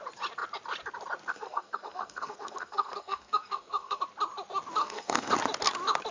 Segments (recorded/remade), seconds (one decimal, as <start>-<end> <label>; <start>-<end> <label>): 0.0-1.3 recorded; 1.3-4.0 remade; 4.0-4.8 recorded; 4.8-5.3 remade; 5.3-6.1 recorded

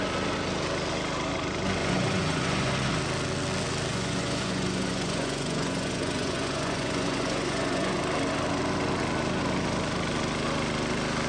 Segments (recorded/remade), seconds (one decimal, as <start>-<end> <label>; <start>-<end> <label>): 0.0-1.8 recorded; 1.8-2.9 remade; 2.9-3.9 recorded; 3.9-8.0 remade; 8.0-11.3 recorded

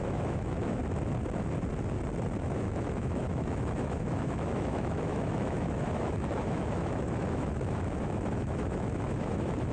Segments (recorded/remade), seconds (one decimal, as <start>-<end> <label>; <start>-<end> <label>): 0.0-0.8 remade; 0.8-2.4 recorded; 2.4-9.7 remade

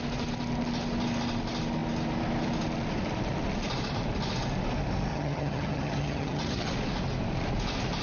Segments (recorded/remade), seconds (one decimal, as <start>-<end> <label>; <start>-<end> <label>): 0.0-5.1 recorded; 5.1-6.7 remade; 6.7-8.0 recorded